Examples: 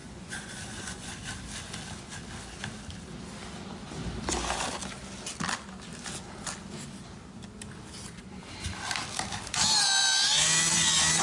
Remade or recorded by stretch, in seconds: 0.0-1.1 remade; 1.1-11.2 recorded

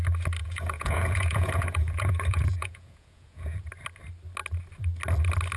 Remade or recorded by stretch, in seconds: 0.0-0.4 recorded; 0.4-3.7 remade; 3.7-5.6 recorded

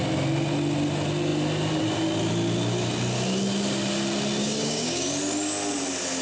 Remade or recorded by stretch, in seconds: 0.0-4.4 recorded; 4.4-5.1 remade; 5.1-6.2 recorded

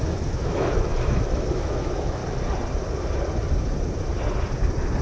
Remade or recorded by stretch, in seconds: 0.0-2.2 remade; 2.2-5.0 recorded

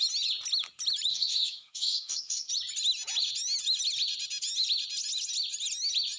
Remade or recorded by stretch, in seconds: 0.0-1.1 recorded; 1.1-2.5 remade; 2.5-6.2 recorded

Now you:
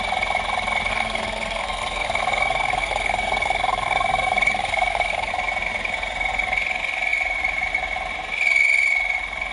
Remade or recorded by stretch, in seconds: 0.0-0.9 recorded; 0.9-5.3 remade; 5.3-9.5 recorded